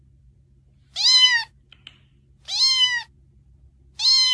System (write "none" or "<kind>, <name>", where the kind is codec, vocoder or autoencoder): none